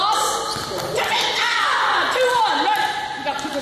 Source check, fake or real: real